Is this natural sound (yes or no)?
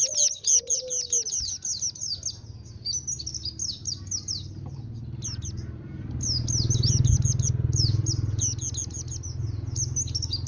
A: yes